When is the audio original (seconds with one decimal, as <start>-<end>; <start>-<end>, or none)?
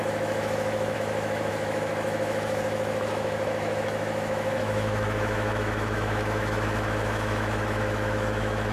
none